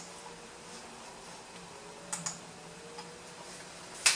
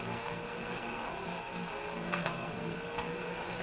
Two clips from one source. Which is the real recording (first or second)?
first